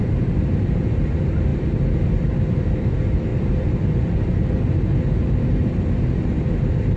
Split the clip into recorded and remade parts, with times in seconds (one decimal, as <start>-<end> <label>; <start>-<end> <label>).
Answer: 0.0-7.0 recorded